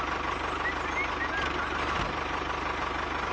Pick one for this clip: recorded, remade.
recorded